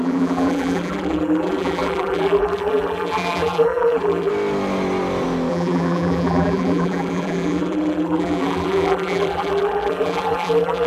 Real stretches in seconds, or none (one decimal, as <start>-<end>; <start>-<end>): 4.3-5.5